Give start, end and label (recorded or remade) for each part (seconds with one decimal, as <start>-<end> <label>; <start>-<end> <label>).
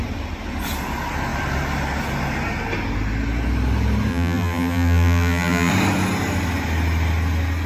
0.0-4.1 recorded; 4.1-5.7 remade; 5.7-7.7 recorded